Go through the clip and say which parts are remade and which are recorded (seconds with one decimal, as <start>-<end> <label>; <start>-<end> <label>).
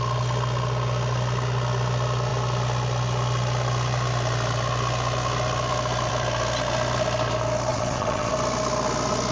0.0-7.7 recorded; 7.7-8.3 remade; 8.3-9.3 recorded